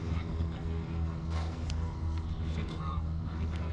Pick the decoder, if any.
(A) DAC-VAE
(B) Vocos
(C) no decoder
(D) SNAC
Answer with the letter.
D